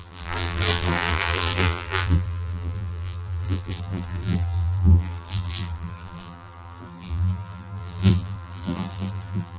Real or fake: fake